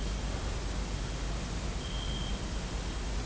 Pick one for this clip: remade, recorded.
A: recorded